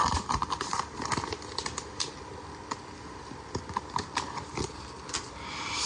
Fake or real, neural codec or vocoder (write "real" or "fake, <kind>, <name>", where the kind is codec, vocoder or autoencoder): real